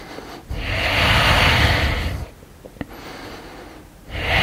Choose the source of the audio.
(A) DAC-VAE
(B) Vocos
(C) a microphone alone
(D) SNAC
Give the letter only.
C